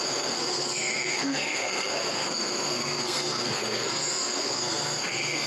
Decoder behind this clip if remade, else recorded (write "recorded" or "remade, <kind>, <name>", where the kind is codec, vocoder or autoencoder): remade, codec, SNAC